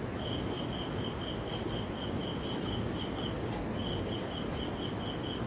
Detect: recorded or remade recorded